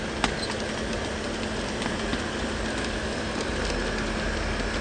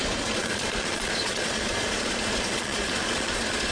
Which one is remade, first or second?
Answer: second